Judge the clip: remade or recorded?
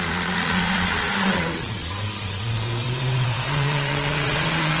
remade